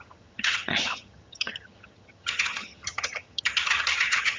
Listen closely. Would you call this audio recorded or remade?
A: remade